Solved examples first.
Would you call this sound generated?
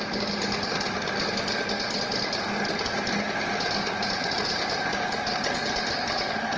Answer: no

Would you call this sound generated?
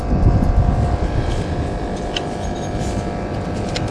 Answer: no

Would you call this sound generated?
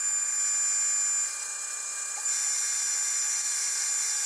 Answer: no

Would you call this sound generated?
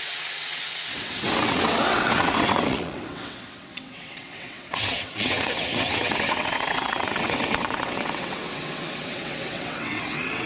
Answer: yes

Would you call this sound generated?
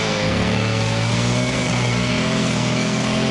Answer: yes